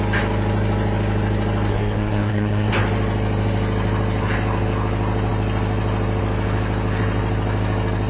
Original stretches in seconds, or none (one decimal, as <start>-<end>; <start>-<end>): 0.0-1.7; 2.7-8.1